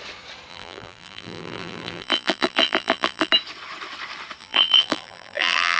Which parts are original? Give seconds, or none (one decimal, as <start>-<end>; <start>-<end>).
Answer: 0.0-0.5; 3.3-4.4